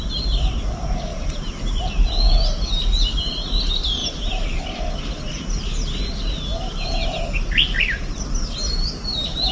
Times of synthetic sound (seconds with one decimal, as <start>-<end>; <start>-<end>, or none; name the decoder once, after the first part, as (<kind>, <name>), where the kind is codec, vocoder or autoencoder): 1.1-1.8 (vocoder, BigVGAN v2); 4.0-5.0